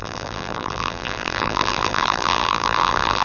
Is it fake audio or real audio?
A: fake